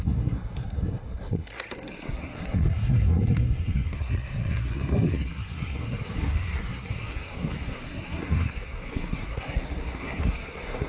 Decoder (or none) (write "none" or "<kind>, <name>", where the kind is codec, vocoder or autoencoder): codec, SNAC